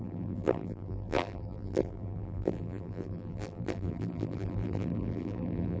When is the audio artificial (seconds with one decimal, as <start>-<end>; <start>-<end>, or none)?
0.0-5.8